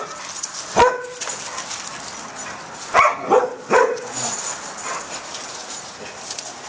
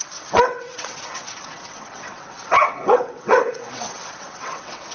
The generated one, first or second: second